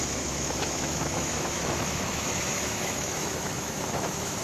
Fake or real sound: fake